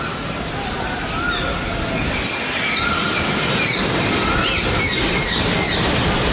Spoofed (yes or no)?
no